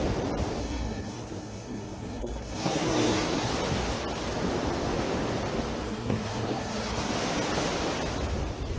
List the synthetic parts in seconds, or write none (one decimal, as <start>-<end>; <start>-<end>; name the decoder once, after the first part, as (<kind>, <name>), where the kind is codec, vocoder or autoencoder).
0.6-3.5 (codec, SNAC); 5.8-7.1